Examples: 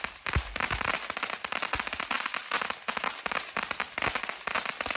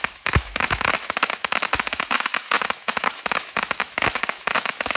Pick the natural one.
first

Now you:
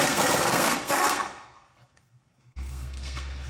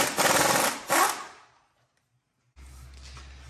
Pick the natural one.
second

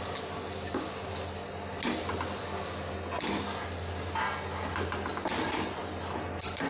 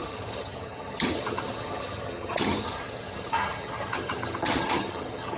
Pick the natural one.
first